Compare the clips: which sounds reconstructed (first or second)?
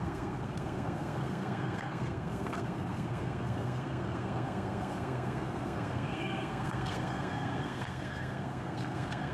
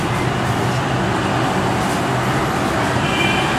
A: first